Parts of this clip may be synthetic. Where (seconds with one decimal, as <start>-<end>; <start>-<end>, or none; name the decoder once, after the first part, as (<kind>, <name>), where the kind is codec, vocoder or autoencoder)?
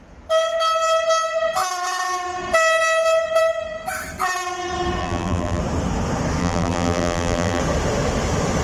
5.0-5.6 (vocoder, BigVGAN v2); 6.4-7.6